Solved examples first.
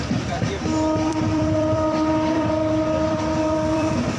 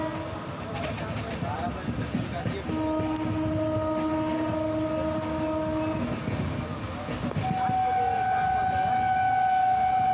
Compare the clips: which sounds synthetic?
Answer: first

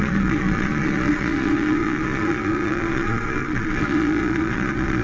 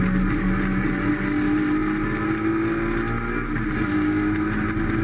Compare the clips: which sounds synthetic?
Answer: first